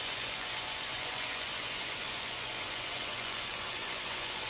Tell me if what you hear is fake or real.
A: fake